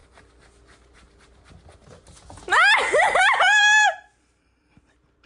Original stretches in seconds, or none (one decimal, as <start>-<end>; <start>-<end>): 0.0-3.2

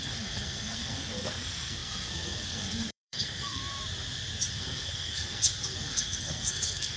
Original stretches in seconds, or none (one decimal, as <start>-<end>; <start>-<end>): 3.6-4.5

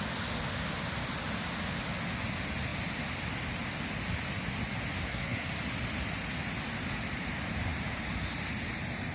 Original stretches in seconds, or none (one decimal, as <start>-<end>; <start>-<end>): 0.0-5.0; 5.5-9.1

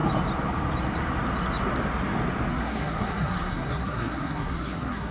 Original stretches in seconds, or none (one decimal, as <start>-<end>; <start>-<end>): 0.0-2.5

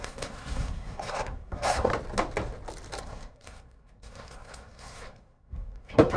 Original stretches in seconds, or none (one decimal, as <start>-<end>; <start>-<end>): 1.9-3.0

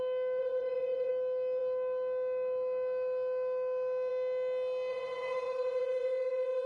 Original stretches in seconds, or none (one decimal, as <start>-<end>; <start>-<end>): 0.0-0.4; 1.1-4.9

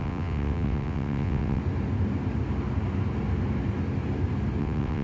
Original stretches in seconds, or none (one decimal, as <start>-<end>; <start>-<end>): 1.6-4.6

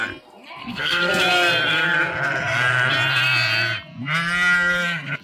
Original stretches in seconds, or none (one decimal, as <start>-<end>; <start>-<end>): 0.0-0.6; 1.1-5.2